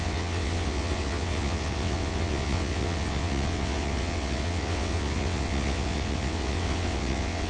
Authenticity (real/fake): fake